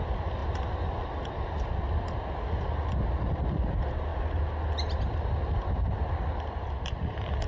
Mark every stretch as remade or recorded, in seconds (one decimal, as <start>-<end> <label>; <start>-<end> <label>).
0.0-7.5 recorded